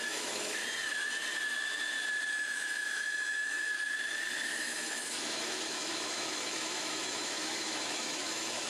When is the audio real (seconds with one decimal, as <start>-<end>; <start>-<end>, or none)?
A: 0.6-2.3; 3.7-4.6